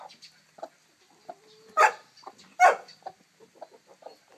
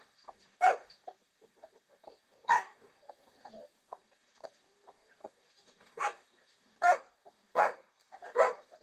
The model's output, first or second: second